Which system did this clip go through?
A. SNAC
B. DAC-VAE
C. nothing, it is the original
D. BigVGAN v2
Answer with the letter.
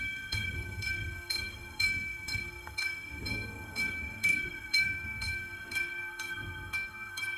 A